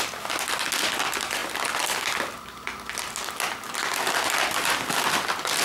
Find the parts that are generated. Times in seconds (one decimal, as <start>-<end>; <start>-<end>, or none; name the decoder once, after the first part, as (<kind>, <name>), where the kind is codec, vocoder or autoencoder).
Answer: none